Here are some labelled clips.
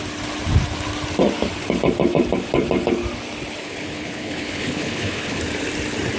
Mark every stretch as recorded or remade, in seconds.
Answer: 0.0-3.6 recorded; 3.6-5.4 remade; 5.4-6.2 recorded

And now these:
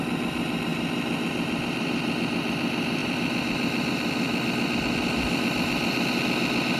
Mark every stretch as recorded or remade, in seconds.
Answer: 0.0-6.8 recorded

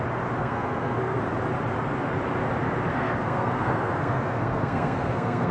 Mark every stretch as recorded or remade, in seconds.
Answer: 0.0-0.4 recorded; 0.4-1.2 remade; 1.2-2.9 recorded; 2.9-5.5 remade

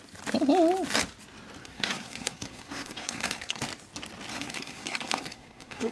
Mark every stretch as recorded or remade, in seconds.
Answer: 0.0-1.6 recorded; 1.6-3.6 remade; 3.6-4.3 recorded; 4.3-5.9 remade

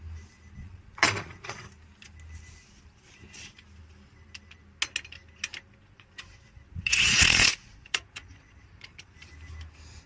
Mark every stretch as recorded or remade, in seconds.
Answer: 0.0-0.6 recorded; 0.6-1.6 remade; 1.6-5.8 recorded; 5.8-9.1 remade; 9.1-10.1 recorded

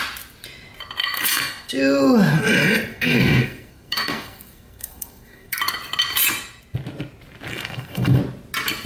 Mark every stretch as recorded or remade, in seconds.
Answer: 0.0-1.0 recorded; 1.0-1.7 remade; 1.7-2.9 recorded; 2.9-5.6 remade; 5.6-7.5 recorded; 7.5-8.2 remade; 8.2-8.9 recorded